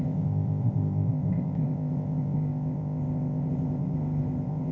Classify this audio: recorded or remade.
remade